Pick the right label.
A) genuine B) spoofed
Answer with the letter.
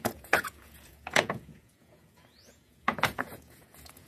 B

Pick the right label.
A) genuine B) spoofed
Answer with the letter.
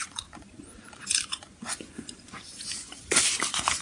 B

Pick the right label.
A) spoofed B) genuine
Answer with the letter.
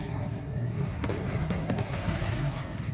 A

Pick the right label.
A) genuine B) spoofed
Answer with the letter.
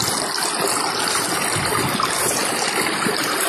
A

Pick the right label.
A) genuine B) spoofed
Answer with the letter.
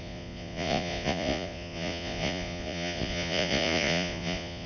B